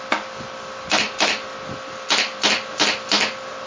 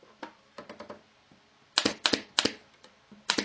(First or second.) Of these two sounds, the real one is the first